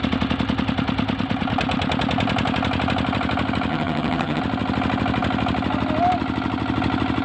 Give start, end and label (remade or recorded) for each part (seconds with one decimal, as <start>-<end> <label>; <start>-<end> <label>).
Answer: 0.0-3.7 recorded; 3.7-4.4 remade; 4.4-7.2 recorded